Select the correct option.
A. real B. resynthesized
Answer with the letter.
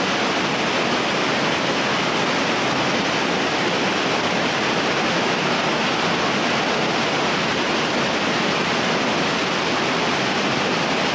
A